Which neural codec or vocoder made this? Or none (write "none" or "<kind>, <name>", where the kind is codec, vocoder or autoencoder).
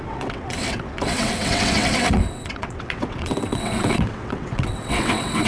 vocoder, WaveNeXt